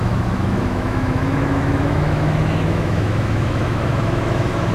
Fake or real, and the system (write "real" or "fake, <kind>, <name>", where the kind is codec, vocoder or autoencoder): fake, autoencoder, DAC-VAE